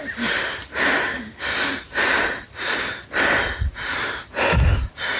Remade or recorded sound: recorded